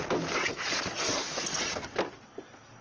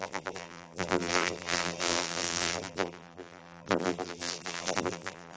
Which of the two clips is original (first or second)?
first